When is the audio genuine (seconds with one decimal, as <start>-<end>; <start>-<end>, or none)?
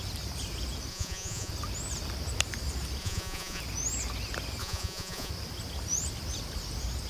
0.0-0.9; 1.5-3.0; 3.6-4.6; 5.3-7.1